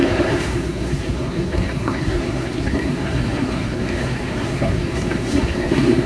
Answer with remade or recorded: remade